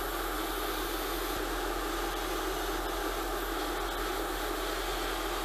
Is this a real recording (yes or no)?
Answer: yes